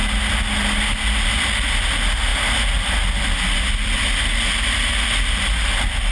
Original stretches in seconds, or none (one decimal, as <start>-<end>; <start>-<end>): 0.0-6.1